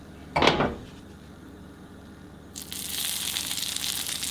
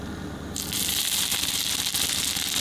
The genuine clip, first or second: first